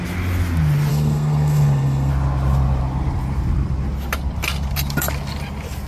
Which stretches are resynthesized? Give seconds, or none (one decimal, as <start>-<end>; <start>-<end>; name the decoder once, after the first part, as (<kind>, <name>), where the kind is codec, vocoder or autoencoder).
0.9-2.1 (codec, SNAC)